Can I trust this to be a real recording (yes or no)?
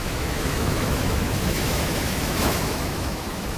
no